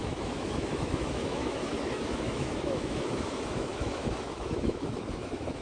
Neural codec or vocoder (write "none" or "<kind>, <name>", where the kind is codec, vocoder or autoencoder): autoencoder, DAC-VAE